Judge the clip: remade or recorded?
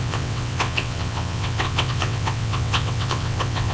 remade